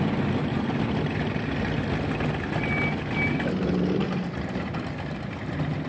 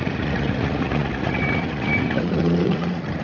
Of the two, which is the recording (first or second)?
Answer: first